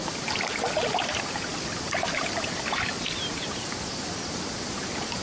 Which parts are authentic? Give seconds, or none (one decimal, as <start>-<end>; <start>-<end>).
0.0-5.2